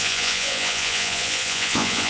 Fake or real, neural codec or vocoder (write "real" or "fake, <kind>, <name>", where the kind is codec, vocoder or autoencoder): fake, vocoder, Vocos